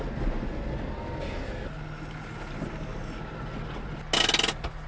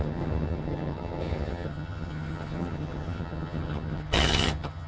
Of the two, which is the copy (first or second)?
second